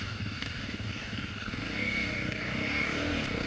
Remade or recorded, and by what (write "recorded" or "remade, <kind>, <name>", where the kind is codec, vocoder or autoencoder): remade, codec, DAC